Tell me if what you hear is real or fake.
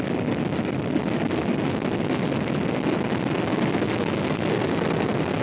real